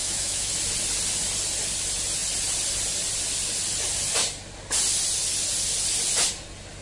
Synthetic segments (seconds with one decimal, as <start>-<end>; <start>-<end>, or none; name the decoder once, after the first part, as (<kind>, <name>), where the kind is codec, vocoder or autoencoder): 0.0-0.5 (autoencoder, DAC-VAE)